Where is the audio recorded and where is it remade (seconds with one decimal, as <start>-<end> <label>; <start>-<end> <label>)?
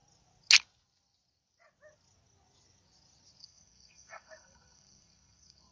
0.0-3.4 recorded; 3.4-5.7 remade